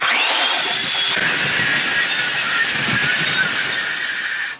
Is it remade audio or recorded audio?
recorded